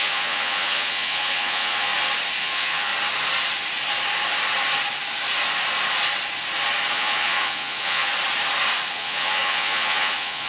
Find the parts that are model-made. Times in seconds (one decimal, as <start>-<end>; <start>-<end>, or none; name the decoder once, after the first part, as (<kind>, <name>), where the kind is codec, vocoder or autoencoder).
0.0-1.9 (vocoder, Vocos); 2.4-2.9; 6.9-8.1; 8.9-10.5